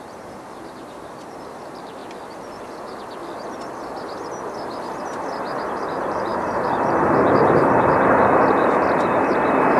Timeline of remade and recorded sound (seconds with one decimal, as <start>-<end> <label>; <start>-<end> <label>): 0.0-2.0 remade; 2.0-5.8 recorded; 5.8-9.8 remade